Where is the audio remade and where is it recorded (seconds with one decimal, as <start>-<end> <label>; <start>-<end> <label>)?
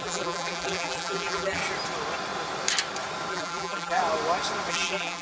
0.0-1.6 remade; 1.6-3.3 recorded; 3.3-4.0 remade; 4.0-4.7 recorded; 4.7-5.2 remade